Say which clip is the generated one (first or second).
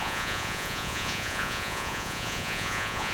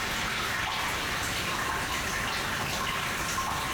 first